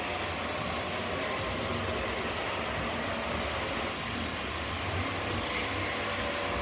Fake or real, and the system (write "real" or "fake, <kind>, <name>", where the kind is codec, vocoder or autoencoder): real